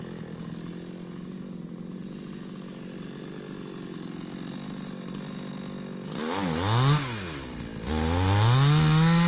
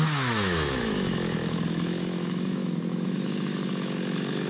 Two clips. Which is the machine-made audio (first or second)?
second